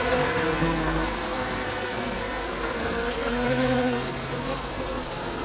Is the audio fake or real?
fake